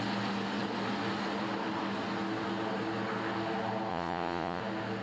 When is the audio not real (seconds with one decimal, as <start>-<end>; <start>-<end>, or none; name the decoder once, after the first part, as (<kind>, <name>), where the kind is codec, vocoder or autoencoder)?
3.9-4.6 (vocoder, Vocos)